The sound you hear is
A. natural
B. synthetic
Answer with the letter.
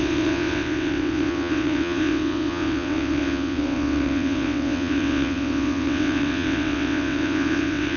B